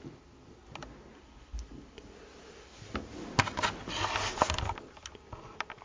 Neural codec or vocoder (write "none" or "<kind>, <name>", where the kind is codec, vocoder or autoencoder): none